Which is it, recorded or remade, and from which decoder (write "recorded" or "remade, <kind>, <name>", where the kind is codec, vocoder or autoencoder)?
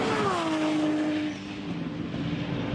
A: recorded